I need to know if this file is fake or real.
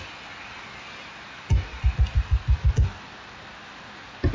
real